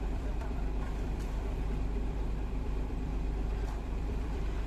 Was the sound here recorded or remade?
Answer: remade